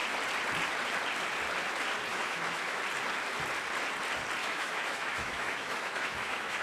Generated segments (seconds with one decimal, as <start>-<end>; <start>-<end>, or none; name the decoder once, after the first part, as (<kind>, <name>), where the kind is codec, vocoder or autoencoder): 2.1-2.8 (autoencoder, DAC-VAE); 4.4-6.6